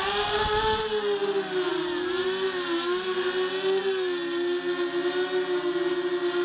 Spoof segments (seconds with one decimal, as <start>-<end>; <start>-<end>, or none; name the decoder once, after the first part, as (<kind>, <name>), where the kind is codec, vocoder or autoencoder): none